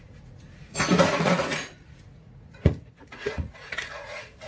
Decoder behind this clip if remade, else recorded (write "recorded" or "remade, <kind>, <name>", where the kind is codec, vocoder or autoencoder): remade, vocoder, Vocos